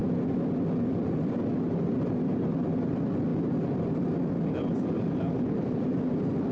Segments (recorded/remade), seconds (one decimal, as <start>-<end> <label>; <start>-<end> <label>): 0.0-6.5 recorded